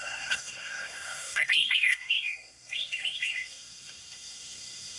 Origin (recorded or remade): remade